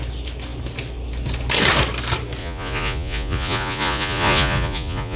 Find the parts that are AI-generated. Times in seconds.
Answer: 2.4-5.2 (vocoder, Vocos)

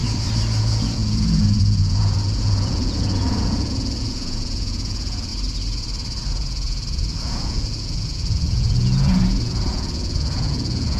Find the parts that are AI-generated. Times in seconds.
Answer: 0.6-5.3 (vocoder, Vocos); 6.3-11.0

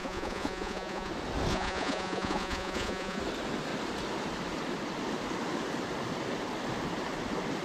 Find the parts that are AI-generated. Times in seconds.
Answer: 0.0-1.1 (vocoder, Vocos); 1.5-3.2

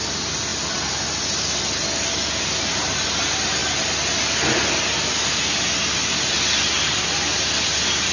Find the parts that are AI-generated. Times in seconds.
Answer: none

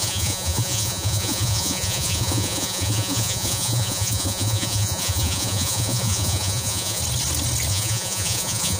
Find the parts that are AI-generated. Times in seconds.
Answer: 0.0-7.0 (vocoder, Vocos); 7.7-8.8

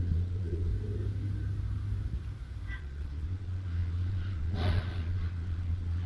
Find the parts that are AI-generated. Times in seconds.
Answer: 0.0-0.7 (vocoder, Vocos); 2.8-6.1

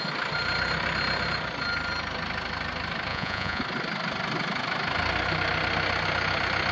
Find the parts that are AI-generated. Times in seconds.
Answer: 3.1-3.6 (vocoder, Vocos)

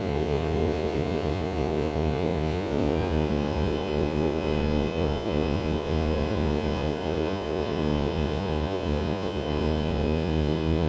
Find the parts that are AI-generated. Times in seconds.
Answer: 0.0-10.9 (vocoder, Vocos)